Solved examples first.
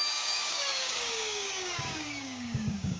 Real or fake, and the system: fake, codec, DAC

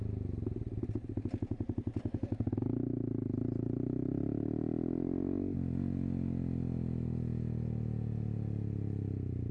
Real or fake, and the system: real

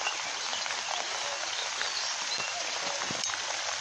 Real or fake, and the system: fake, vocoder, BigVGAN v2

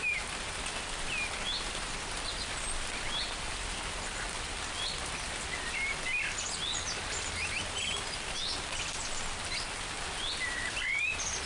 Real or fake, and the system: real